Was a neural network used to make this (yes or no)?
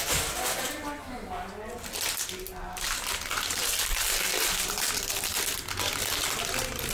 no